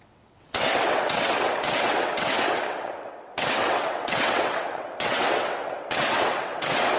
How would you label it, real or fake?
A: fake